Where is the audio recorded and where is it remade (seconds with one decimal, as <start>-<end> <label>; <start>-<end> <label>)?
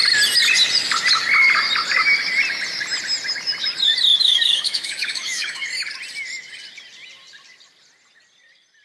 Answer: 0.0-4.2 recorded; 4.2-5.7 remade; 5.7-8.8 recorded